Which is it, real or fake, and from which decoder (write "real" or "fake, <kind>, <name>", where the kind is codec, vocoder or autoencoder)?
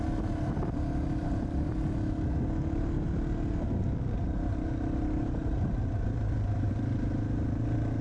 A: real